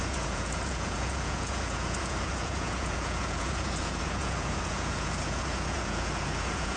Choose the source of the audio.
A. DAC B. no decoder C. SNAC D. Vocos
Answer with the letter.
D